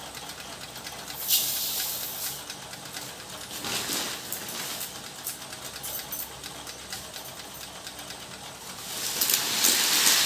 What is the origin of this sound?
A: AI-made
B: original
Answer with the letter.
B